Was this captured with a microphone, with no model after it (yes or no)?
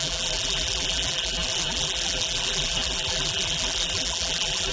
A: no